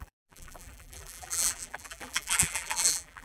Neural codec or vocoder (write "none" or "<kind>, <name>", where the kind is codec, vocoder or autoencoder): vocoder, BigVGAN v2